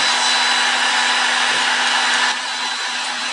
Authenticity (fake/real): real